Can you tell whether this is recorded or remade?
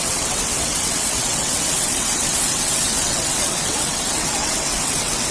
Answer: remade